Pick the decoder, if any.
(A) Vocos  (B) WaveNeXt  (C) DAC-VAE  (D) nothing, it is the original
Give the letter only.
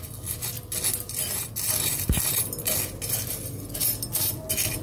D